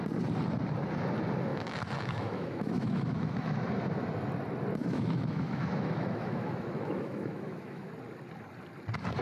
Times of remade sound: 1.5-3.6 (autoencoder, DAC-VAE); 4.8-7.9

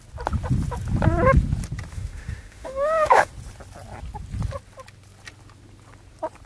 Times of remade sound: 1.9-3.3 (autoencoder, DAC-VAE)

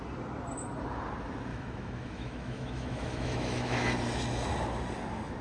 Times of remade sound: 1.5-3.9 (autoencoder, DAC-VAE)

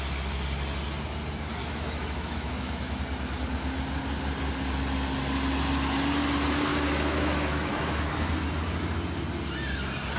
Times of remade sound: 1.6-3.0 (autoencoder, DAC-VAE); 6.7-8.1

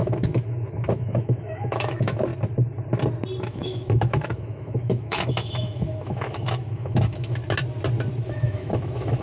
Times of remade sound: 0.0-2.3 (autoencoder, DAC-VAE); 3.4-7.4; 8.2-9.2

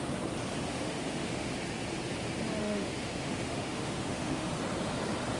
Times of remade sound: 0.7-1.5 (autoencoder, DAC-VAE); 2.6-4.5